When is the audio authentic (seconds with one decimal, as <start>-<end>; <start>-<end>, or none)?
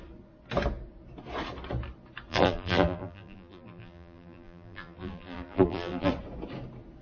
0.0-2.3; 6.1-7.0